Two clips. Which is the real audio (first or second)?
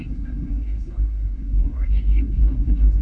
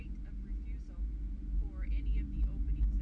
second